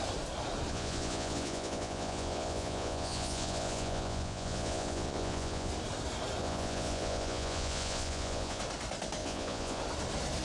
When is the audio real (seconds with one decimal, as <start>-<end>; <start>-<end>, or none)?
0.0-0.7; 5.7-6.4; 8.6-9.2; 9.8-10.4